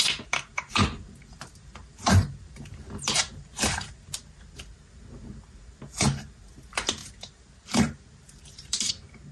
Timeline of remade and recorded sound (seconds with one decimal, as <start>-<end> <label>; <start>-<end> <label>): 0.0-0.5 recorded; 0.5-4.2 remade; 4.2-7.0 recorded; 7.0-8.9 remade; 8.9-9.3 recorded